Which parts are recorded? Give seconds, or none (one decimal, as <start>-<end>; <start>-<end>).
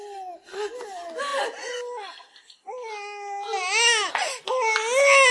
0.0-5.3